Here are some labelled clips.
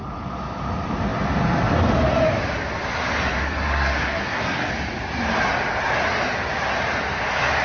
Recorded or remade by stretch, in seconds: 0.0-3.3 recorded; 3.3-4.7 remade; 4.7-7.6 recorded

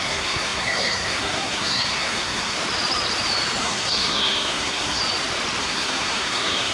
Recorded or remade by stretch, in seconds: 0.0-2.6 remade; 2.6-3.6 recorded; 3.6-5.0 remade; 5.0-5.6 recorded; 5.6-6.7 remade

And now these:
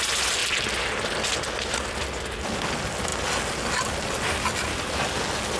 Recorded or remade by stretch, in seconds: 0.0-5.6 recorded

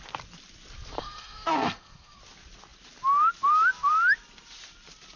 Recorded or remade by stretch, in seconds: 0.0-1.0 recorded; 1.0-2.2 remade; 2.2-5.2 recorded

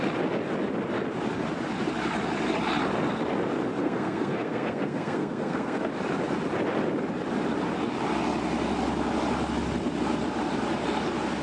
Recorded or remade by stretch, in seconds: 0.0-3.8 recorded; 3.8-5.9 remade; 5.9-11.4 recorded

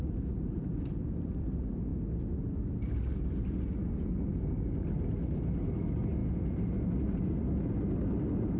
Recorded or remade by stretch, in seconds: 0.0-8.6 recorded

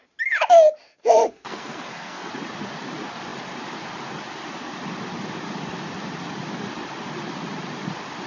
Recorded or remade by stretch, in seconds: 0.0-0.9 recorded; 0.9-2.3 remade; 2.3-8.3 recorded